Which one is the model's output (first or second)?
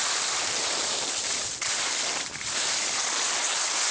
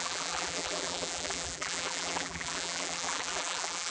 second